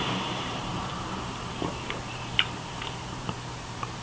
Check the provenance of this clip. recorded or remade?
remade